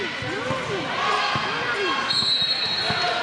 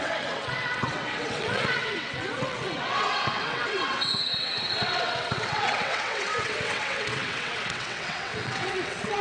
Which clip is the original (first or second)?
first